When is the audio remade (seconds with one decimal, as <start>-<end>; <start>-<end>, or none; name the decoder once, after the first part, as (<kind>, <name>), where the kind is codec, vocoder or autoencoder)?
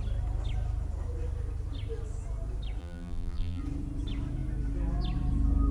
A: 2.8-3.6 (vocoder, BigVGAN v2)